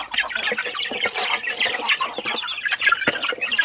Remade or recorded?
remade